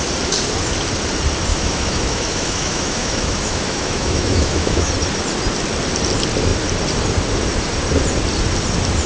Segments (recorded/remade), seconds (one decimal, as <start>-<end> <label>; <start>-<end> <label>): 0.0-1.5 recorded; 1.5-4.9 remade; 4.9-9.1 recorded